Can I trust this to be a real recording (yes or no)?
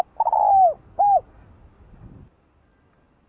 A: yes